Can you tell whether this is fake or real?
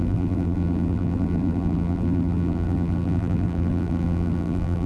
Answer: fake